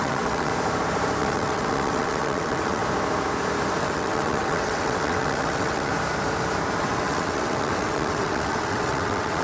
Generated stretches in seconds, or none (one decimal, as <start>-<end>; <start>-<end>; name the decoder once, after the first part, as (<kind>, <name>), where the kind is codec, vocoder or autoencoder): 0.0-0.5 (vocoder, WaveNeXt); 1.2-2.8; 3.8-5.9; 6.8-9.4